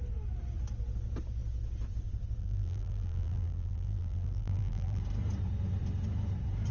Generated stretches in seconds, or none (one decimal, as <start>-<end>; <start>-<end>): 2.4-5.0